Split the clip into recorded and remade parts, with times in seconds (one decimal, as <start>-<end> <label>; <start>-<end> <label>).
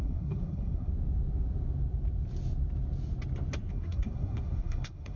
0.0-0.9 remade; 0.9-3.7 recorded; 3.7-5.2 remade